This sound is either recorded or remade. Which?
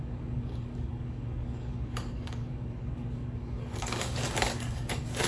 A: remade